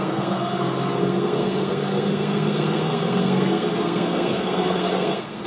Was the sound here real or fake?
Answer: fake